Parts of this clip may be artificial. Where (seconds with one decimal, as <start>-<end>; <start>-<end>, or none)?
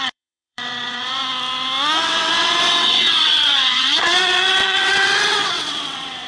0.0-1.2; 2.0-6.3